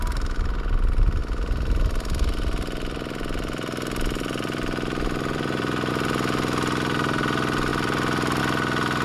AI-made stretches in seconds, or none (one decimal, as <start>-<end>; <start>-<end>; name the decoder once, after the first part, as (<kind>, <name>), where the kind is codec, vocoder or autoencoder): 1.2-5.9 (vocoder, BigVGAN v2); 7.7-8.4